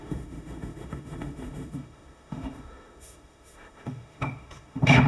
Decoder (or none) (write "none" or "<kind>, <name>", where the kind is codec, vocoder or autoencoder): autoencoder, DAC-VAE